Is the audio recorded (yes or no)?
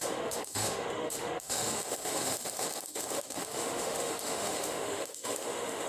no